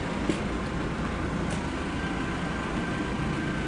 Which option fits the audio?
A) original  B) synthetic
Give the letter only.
A